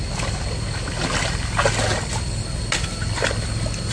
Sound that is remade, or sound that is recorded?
recorded